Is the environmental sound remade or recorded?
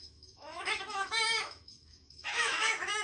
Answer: remade